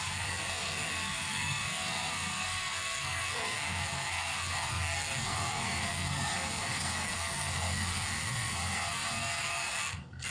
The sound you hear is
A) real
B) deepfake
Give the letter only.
B